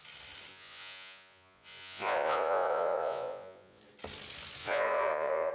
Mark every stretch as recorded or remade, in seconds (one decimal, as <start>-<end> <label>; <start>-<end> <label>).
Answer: 0.0-0.5 recorded; 0.5-3.8 remade; 3.8-4.6 recorded; 4.6-5.5 remade